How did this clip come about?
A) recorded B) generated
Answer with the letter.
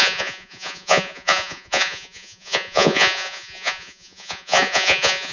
B